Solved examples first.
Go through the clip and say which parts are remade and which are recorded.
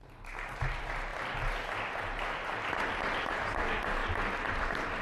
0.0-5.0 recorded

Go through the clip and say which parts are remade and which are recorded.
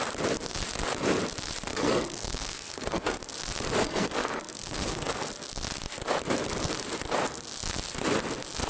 0.0-1.7 recorded; 1.7-3.2 remade; 3.2-3.8 recorded; 3.8-5.3 remade; 5.3-8.7 recorded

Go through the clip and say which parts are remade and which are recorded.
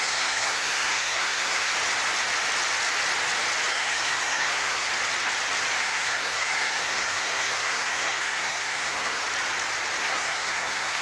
0.0-1.7 remade; 1.7-3.7 recorded; 3.7-4.9 remade; 4.9-5.8 recorded; 5.8-9.2 remade; 9.2-10.0 recorded; 10.0-11.0 remade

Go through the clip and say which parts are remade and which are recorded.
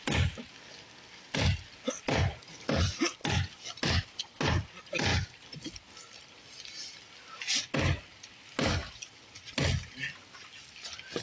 0.0-11.2 recorded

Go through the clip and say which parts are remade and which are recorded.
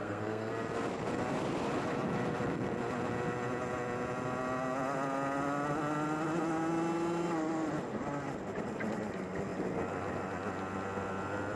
0.0-0.5 remade; 0.5-11.6 recorded